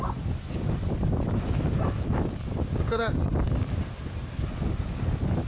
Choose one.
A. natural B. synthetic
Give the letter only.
A